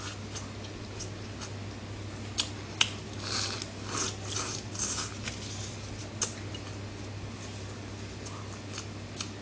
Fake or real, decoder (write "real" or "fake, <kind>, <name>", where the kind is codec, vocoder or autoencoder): real